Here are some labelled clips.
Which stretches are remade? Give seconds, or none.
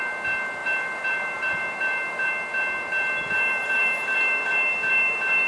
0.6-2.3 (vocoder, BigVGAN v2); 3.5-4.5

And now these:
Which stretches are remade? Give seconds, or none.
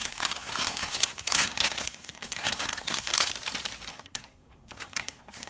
0.0-3.3 (codec, SNAC); 3.9-5.5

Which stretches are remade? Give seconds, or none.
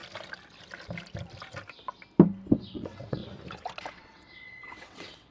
2.5-3.2 (vocoder, WaveNeXt); 3.9-5.3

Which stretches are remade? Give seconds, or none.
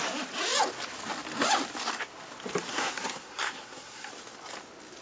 2.7-4.1 (codec, SNAC)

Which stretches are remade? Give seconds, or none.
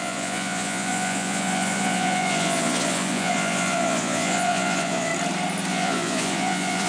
0.0-5.1 (vocoder, Vocos); 5.7-6.9